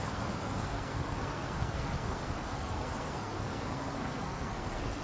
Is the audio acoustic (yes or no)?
no